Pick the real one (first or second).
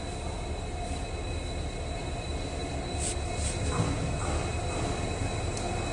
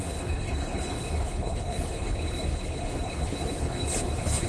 first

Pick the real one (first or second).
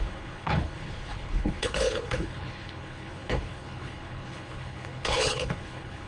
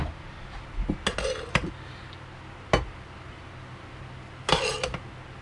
second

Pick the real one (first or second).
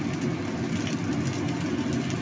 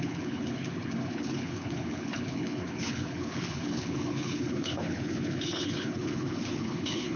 first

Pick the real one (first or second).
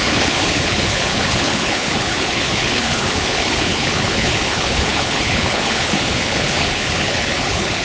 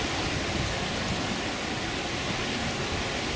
second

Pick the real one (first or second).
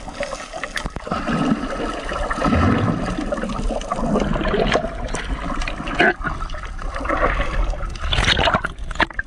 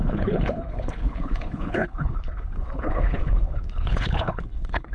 first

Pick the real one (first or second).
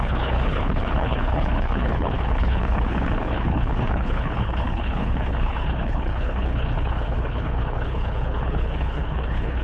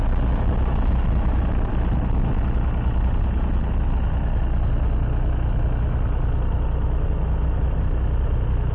second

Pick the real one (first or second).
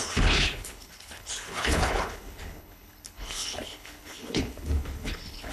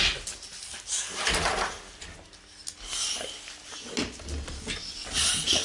second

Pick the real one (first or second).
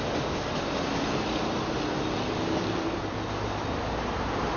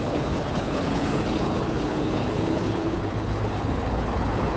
first